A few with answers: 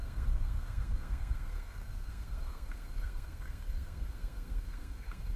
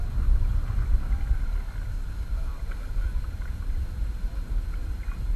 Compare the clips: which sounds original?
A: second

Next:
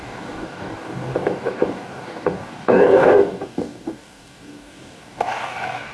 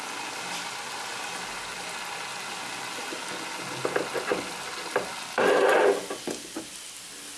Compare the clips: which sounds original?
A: second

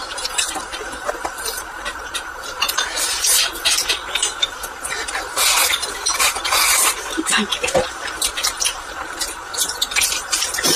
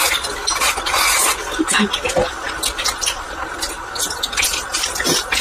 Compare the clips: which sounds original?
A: second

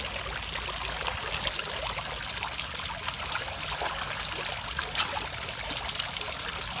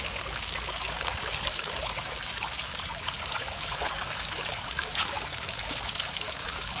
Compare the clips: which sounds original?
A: first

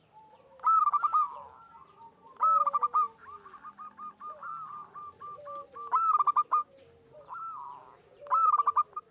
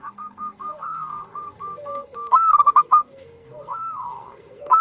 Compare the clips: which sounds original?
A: first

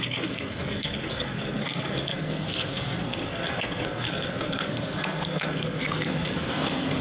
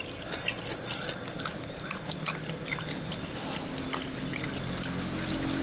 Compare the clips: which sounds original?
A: second